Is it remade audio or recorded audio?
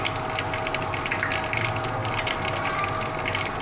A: recorded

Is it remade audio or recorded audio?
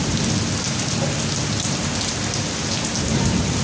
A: recorded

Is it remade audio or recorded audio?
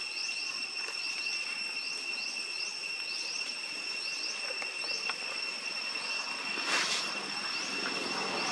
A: recorded